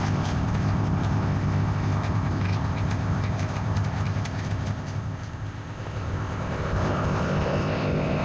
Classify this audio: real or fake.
fake